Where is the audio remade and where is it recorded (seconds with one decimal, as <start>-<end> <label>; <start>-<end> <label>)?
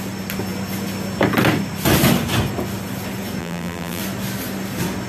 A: 0.0-3.4 recorded; 3.4-4.0 remade; 4.0-5.1 recorded